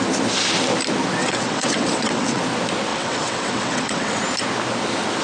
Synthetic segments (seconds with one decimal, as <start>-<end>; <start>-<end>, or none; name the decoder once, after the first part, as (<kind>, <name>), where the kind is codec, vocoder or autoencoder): 1.2-2.4 (vocoder, WaveNeXt); 2.9-4.2